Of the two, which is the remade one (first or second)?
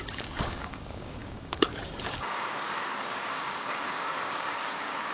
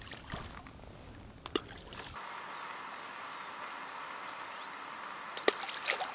first